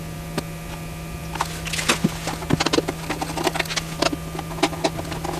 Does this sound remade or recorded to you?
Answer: recorded